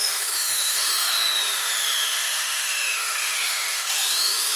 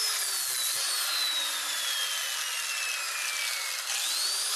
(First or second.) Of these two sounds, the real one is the second